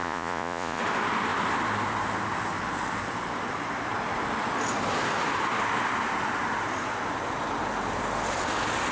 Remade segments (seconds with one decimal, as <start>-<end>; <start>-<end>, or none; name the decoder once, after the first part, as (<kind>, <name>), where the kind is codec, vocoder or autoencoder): 0.0-0.8 (vocoder, Vocos)